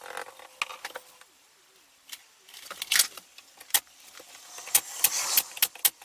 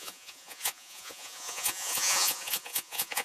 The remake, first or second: second